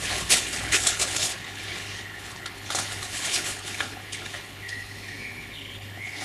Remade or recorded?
remade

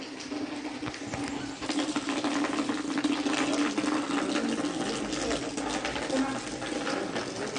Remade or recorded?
recorded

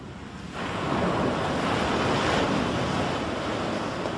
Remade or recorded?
recorded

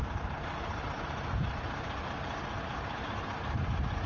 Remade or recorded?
recorded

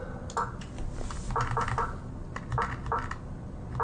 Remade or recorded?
recorded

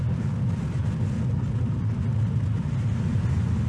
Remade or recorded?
recorded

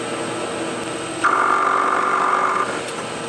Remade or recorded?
recorded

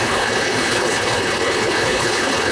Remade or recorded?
remade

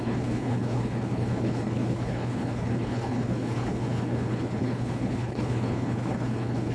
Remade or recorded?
remade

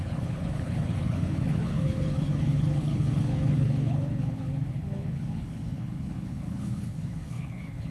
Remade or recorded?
remade